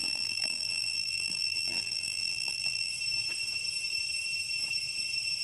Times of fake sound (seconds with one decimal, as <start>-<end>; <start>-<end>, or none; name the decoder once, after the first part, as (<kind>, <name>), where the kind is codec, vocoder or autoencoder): 0.0-2.9 (vocoder, BigVGAN v2)